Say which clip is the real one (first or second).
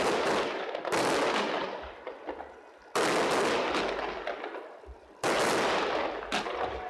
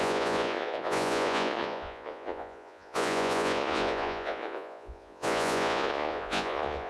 first